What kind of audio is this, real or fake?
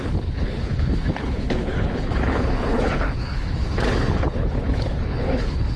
fake